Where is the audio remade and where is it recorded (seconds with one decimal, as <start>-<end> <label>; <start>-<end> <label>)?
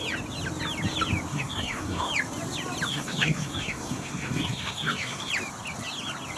0.0-1.3 recorded; 1.3-2.1 remade; 2.1-2.9 recorded; 2.9-5.3 remade; 5.3-6.4 recorded